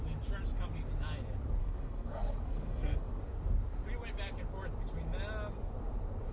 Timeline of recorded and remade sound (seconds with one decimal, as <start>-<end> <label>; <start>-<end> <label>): 0.0-1.6 recorded; 1.6-3.2 remade; 3.2-6.3 recorded